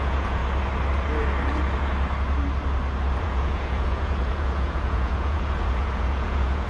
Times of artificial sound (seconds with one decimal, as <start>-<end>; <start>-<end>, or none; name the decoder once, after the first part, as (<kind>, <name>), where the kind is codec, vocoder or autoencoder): 0.0-0.4 (vocoder, Vocos); 3.2-6.7

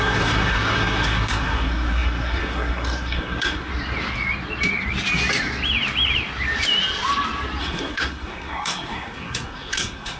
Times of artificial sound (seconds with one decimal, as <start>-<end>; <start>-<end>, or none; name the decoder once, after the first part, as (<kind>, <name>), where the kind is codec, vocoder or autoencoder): 0.0-3.7 (codec, SNAC); 7.6-10.2

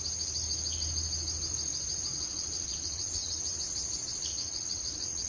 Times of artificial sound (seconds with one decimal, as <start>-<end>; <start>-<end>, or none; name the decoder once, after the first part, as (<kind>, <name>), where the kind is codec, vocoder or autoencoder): 2.1-5.3 (vocoder, WaveNeXt)

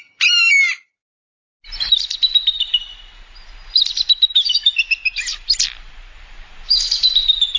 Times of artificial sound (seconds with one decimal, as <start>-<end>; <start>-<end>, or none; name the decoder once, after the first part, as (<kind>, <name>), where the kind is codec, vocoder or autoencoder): none

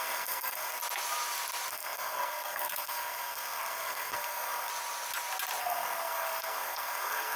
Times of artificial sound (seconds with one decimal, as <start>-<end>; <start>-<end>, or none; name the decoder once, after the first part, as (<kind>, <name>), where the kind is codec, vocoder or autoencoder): 0.0-0.8 (codec, SNAC); 1.7-4.7; 5.6-7.4